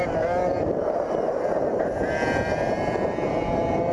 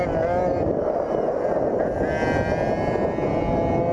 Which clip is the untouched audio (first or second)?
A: second